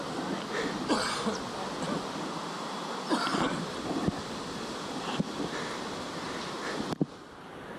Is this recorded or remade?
recorded